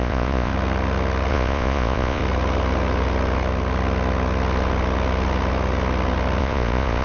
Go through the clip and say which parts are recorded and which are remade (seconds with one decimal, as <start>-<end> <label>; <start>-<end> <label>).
0.0-0.5 remade; 0.5-1.3 recorded; 1.3-2.2 remade; 2.2-6.4 recorded; 6.4-7.0 remade